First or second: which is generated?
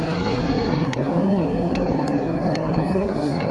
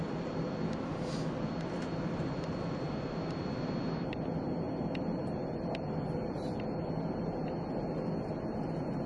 first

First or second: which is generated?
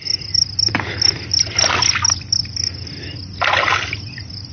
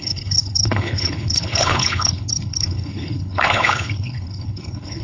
second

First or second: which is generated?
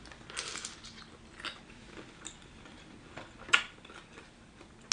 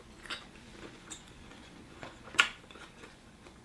second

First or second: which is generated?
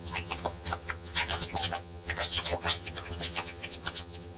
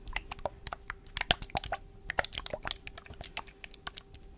first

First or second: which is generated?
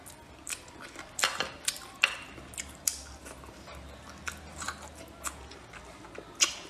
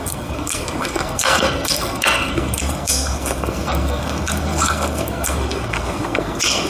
second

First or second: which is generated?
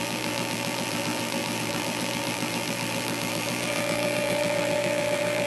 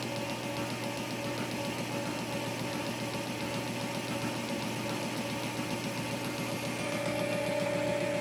first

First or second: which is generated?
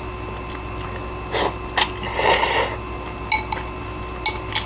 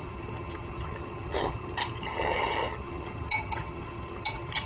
second